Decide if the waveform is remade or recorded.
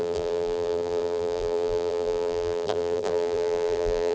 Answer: remade